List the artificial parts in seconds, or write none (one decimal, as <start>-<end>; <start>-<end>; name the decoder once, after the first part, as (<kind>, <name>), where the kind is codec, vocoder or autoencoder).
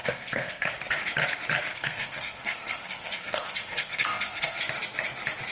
0.0-0.7 (codec, SNAC); 1.7-4.6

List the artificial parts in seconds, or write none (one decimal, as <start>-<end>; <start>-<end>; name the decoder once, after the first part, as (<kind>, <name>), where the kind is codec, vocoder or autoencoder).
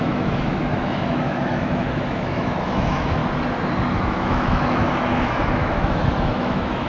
0.0-3.2 (autoencoder, DAC-VAE); 4.0-6.9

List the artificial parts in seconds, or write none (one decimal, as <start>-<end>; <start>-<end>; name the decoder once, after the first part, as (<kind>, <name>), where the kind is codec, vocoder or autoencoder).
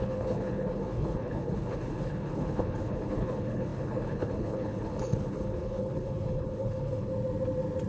0.0-7.1 (codec, HILCodec)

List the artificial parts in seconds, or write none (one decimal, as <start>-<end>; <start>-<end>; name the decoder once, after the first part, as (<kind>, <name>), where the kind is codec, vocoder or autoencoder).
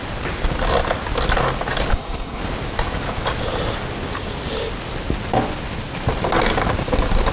1.9-2.4 (codec, SNAC)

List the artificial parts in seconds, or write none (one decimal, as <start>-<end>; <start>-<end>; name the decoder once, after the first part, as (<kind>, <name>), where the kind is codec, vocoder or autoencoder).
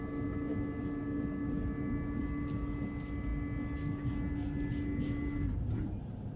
none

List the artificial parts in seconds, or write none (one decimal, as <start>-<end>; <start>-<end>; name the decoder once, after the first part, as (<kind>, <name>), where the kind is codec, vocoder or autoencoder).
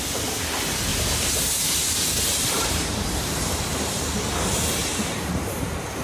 0.9-4.0 (vocoder, BigVGAN v2); 4.8-5.4